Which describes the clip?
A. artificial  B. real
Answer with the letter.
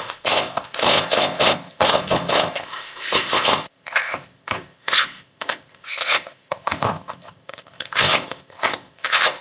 A